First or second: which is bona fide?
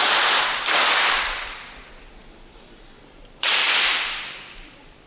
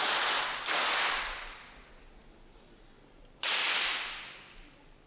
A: second